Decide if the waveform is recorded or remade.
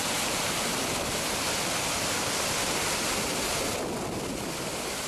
recorded